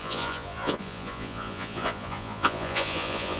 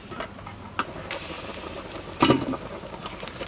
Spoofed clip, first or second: first